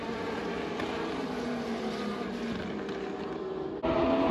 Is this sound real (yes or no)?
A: yes